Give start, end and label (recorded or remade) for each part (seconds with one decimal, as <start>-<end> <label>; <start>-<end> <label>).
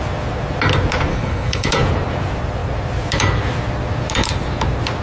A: 0.0-1.1 recorded; 1.1-1.7 remade; 1.7-5.0 recorded